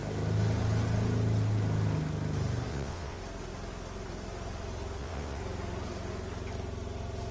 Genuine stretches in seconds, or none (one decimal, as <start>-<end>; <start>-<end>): 0.0-2.7; 3.2-5.0; 5.4-7.3